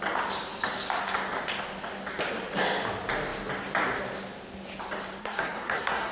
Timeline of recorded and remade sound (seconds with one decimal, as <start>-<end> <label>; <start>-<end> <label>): 0.0-5.2 recorded; 5.2-6.1 remade